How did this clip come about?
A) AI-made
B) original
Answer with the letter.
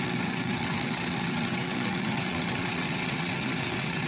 A